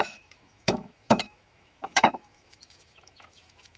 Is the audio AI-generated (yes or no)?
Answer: yes